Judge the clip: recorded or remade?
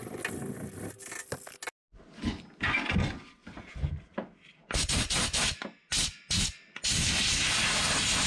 recorded